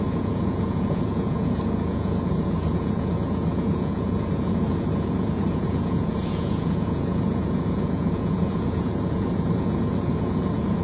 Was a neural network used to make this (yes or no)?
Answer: yes